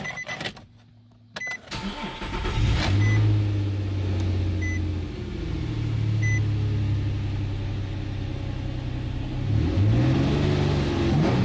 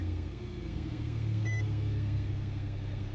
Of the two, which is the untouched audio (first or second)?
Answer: first